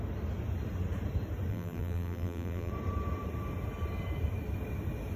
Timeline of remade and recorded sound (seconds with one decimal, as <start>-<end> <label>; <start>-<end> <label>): 0.0-1.5 recorded; 1.5-2.7 remade; 2.7-5.2 recorded